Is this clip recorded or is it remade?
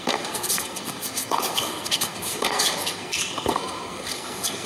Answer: remade